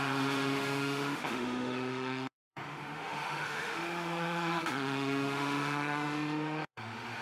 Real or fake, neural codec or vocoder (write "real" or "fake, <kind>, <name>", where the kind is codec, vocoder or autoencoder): fake, autoencoder, DAC-VAE